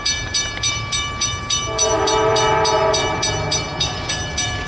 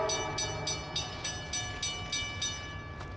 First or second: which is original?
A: second